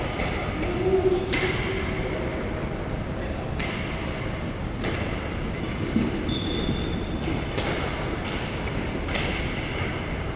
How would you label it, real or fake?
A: real